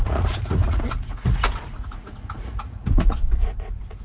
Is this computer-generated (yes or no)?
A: yes